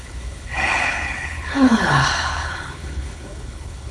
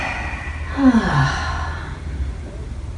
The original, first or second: second